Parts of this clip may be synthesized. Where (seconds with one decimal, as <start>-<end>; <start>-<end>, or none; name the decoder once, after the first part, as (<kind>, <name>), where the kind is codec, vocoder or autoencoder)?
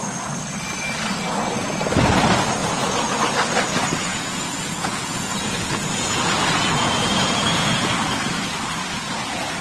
2.6-3.2 (vocoder, Vocos); 4.1-8.0